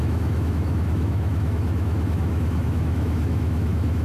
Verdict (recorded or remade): remade